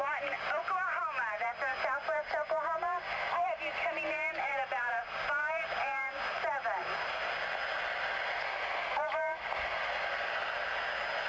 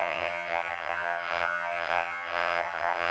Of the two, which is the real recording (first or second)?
first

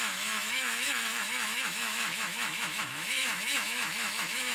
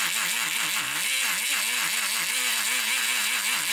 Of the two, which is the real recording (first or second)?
second